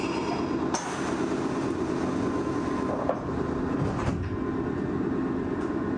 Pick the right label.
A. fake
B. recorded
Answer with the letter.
B